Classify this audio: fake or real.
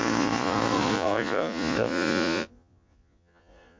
fake